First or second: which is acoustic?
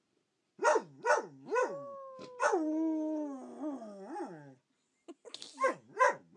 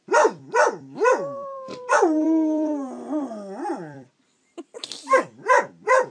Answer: first